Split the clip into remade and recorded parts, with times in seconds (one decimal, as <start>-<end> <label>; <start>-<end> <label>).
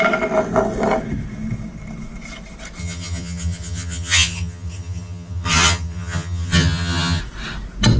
0.0-2.8 recorded; 2.8-7.2 remade; 7.2-8.0 recorded